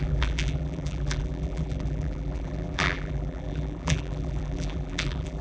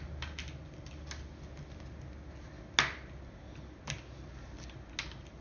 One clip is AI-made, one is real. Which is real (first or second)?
second